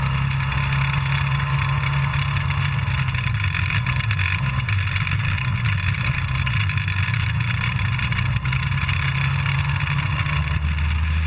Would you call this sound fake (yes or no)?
no